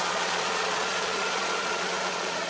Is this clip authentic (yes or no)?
no